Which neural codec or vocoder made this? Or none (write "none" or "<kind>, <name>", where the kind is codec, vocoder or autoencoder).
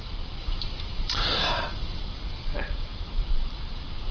vocoder, BigVGAN v2